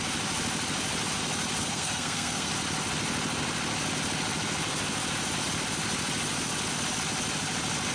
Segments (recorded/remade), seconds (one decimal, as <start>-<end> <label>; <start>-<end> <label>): 0.0-1.6 recorded; 1.6-2.5 remade; 2.5-7.9 recorded